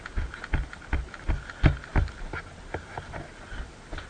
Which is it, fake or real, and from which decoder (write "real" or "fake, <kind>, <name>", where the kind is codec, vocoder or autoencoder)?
real